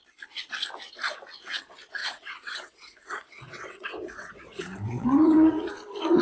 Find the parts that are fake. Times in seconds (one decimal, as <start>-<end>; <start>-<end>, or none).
2.0-5.7